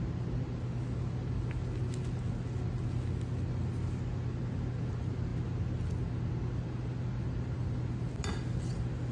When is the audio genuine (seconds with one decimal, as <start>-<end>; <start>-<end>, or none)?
0.0-9.1